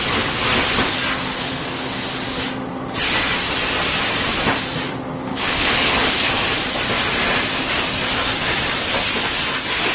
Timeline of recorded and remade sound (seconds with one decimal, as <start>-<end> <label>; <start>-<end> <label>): 0.0-1.3 recorded; 1.3-1.9 remade; 1.9-5.3 recorded; 5.3-6.3 remade; 6.3-9.9 recorded